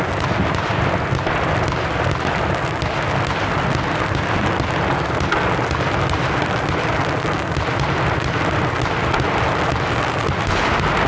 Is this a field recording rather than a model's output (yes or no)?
yes